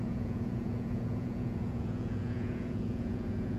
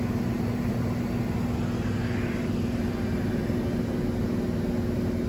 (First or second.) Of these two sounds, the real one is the second